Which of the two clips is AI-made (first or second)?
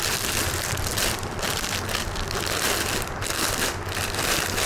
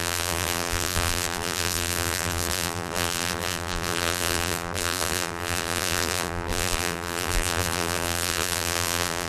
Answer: second